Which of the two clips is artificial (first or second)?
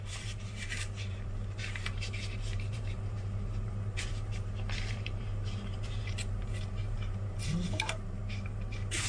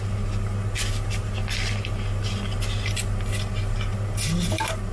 first